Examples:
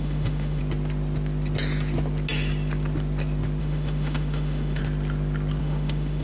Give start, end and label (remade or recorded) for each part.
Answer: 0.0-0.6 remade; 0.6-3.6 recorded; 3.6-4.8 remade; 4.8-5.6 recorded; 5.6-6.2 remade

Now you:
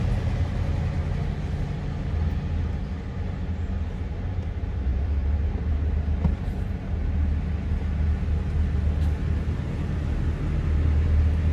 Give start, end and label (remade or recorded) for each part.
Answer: 0.0-11.5 recorded

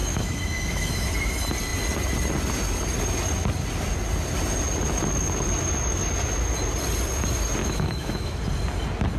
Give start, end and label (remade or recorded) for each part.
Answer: 0.0-1.1 remade; 1.1-7.6 recorded; 7.6-8.4 remade; 8.4-9.2 recorded

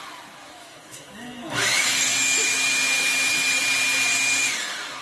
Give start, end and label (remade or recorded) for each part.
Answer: 0.0-0.6 recorded; 0.6-3.6 remade; 3.6-5.0 recorded